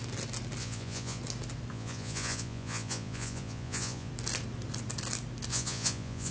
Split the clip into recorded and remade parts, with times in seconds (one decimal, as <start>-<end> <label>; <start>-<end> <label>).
0.0-0.6 recorded; 0.6-1.2 remade; 1.2-1.7 recorded; 1.7-4.1 remade; 4.1-5.5 recorded; 5.5-6.3 remade